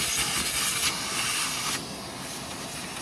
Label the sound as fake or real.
real